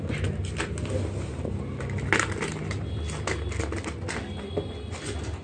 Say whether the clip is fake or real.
real